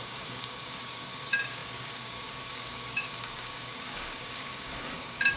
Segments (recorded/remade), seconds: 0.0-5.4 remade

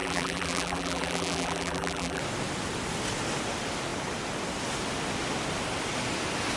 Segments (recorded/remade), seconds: 0.0-2.2 remade; 2.2-6.6 recorded

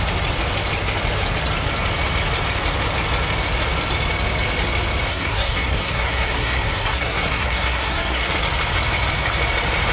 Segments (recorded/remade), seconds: 0.0-5.1 recorded; 5.1-8.4 remade; 8.4-9.9 recorded

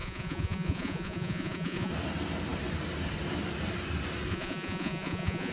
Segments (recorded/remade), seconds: 0.0-1.9 remade; 1.9-4.3 recorded; 4.3-5.5 remade

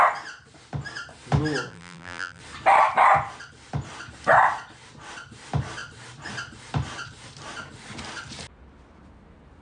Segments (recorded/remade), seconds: 0.0-1.7 recorded; 1.7-2.4 remade; 2.4-9.6 recorded